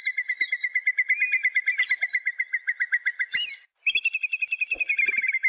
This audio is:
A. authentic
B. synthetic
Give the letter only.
A